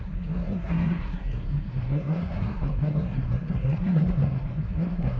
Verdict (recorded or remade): remade